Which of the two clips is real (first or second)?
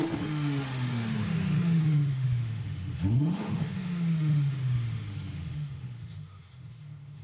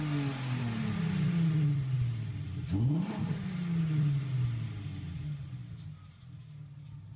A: second